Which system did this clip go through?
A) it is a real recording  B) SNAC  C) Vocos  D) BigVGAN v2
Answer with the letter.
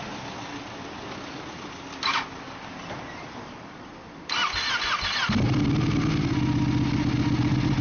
A